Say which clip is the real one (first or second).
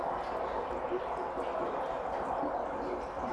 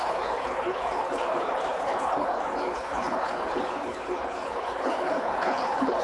first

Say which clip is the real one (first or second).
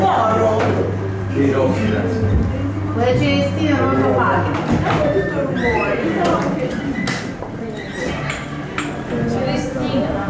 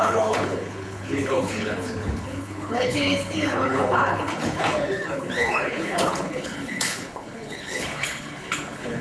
first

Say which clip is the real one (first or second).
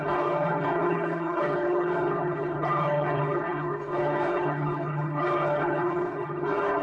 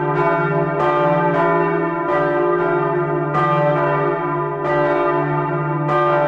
second